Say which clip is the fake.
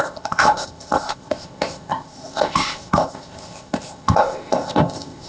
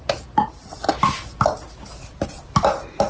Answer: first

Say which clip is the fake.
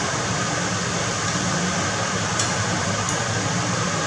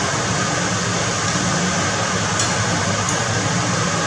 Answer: first